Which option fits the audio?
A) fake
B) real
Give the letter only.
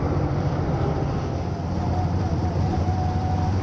B